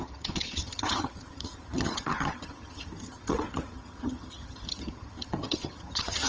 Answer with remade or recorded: remade